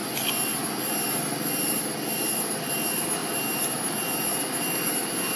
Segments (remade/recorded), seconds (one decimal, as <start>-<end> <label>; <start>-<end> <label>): 0.0-5.4 recorded